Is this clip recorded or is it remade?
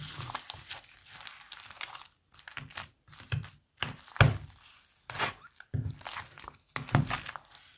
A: recorded